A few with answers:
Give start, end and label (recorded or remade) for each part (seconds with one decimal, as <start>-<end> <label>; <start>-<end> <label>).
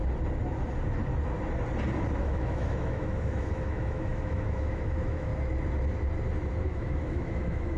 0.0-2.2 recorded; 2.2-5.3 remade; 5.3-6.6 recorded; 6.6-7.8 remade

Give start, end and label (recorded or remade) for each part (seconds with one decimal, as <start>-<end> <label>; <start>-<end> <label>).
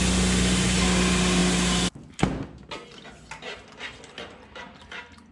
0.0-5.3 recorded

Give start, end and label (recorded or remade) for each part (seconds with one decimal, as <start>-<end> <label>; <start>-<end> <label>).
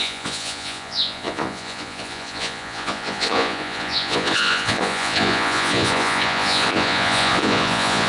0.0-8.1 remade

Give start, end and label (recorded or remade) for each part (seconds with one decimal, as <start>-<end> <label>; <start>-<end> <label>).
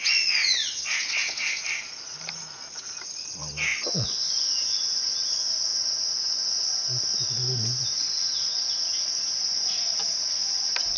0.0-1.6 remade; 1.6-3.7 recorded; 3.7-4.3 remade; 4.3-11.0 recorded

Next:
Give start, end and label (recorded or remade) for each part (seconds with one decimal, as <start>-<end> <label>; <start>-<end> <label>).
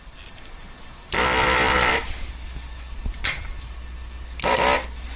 0.0-1.4 recorded; 1.4-3.7 remade; 3.7-5.2 recorded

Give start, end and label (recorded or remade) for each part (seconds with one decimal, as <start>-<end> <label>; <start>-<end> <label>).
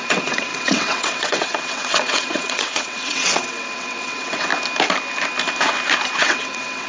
0.0-4.5 remade; 4.5-6.2 recorded; 6.2-6.9 remade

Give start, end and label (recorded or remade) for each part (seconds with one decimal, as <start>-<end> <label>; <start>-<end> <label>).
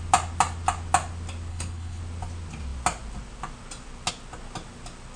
0.0-1.5 recorded; 1.5-2.0 remade; 2.0-5.2 recorded